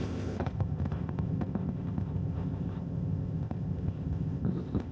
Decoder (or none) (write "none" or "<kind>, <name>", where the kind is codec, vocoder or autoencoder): codec, ZipCodec